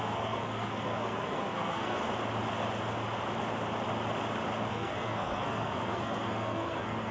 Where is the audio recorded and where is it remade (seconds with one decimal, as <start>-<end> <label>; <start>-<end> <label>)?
0.0-2.0 remade; 2.0-4.7 recorded; 4.7-7.1 remade